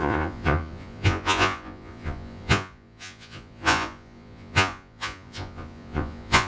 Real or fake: fake